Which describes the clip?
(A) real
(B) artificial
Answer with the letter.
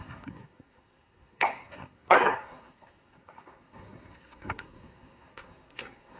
B